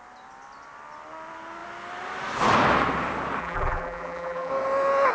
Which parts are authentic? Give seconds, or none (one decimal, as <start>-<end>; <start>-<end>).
0.0-3.4; 4.5-5.1